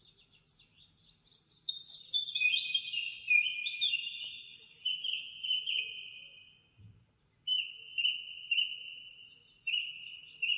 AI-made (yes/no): yes